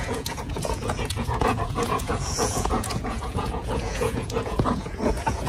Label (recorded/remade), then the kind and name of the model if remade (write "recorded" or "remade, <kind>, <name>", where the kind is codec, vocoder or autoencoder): remade, vocoder, Vocos